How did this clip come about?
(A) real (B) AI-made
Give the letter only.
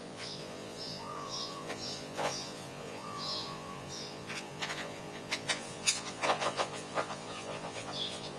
B